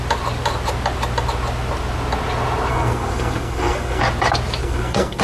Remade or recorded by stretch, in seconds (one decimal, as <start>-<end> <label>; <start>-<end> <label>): 0.0-2.7 recorded; 2.7-4.0 remade; 4.0-4.6 recorded; 4.6-5.2 remade